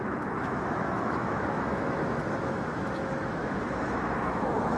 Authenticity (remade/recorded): remade